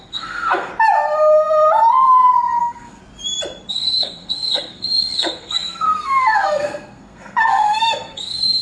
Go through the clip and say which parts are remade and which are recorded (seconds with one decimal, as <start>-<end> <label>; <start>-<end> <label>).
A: 0.0-0.7 remade; 0.7-2.6 recorded; 2.6-3.0 remade; 3.0-3.7 recorded; 3.7-8.6 remade